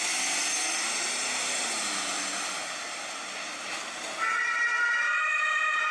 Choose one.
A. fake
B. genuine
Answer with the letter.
B